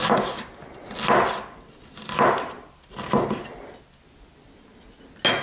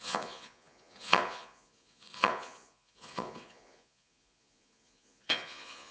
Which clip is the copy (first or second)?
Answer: second